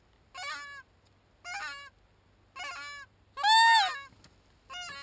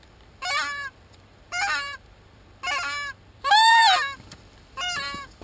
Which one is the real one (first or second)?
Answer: first